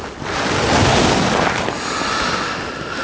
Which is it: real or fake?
real